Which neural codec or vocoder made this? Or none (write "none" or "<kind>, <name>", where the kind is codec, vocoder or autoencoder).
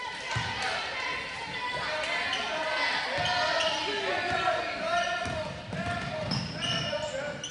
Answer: none